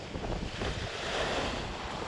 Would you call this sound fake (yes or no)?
no